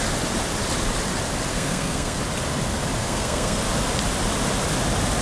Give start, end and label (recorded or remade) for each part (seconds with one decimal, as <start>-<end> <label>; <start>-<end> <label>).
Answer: 0.0-1.5 recorded; 1.5-2.2 remade; 2.2-3.0 recorded; 3.0-3.6 remade; 3.6-5.2 recorded